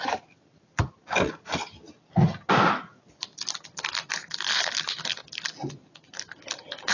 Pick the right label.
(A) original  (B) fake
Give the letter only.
A